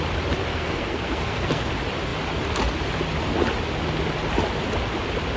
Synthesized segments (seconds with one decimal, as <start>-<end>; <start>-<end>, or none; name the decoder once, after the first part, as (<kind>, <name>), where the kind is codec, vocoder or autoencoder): 0.5-1.7 (codec, SNAC)